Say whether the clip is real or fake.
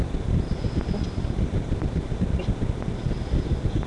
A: real